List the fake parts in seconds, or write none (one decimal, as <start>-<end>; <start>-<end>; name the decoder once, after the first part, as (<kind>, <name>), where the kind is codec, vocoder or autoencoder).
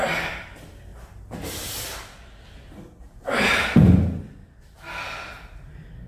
none